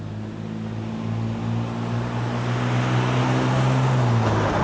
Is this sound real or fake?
real